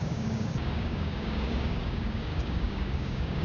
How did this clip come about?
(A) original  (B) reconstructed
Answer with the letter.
B